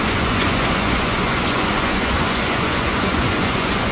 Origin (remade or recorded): remade